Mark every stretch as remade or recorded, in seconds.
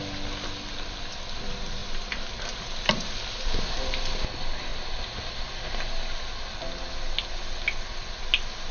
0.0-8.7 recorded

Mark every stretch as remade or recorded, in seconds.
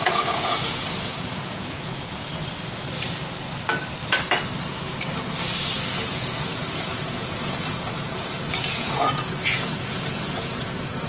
0.0-2.4 remade; 2.4-5.9 recorded; 5.9-11.1 remade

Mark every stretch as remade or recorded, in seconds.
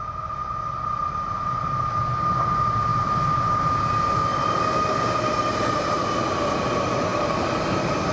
0.0-4.3 recorded; 4.3-6.0 remade; 6.0-7.1 recorded; 7.1-8.1 remade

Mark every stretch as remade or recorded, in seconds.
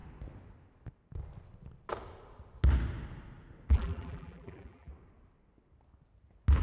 0.0-3.7 recorded; 3.7-4.9 remade; 4.9-6.6 recorded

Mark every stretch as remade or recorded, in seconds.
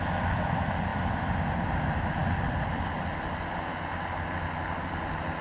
0.0-5.4 recorded